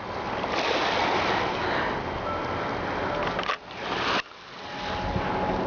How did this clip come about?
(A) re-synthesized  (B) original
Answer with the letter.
B